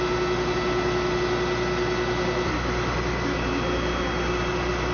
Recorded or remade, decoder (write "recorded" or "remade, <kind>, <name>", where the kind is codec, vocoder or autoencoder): recorded